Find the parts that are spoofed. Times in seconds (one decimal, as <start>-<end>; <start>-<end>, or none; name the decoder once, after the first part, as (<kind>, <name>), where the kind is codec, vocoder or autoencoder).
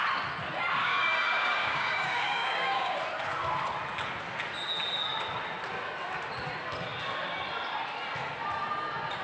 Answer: 0.8-3.0 (codec, DAC)